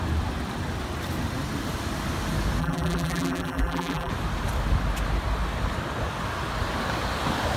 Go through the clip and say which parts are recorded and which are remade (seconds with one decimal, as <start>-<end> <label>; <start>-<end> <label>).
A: 0.0-2.6 recorded; 2.6-4.1 remade; 4.1-7.6 recorded